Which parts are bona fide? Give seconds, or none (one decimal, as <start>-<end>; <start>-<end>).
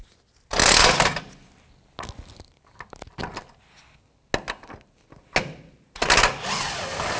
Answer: 0.0-7.2